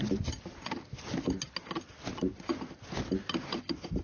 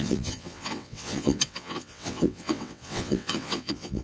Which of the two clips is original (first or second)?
first